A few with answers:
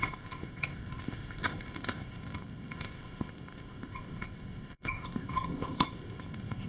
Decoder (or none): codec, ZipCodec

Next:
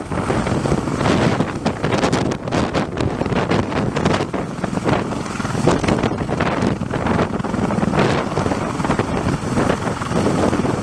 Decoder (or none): none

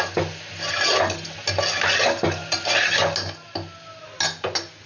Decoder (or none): none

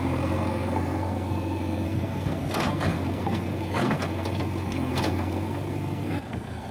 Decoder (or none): codec, SNAC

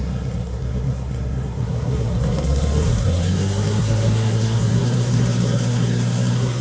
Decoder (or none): codec, SNAC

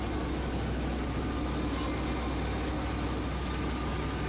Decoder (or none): none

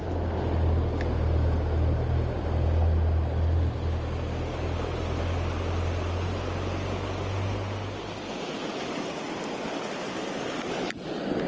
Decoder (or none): none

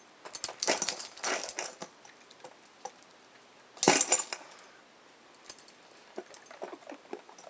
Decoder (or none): none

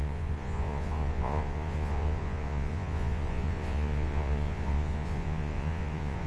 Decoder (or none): vocoder, Vocos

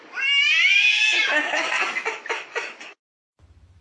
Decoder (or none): none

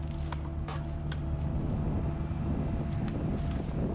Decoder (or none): none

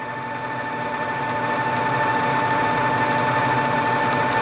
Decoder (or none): none